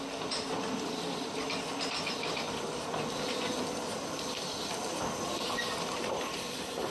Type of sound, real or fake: fake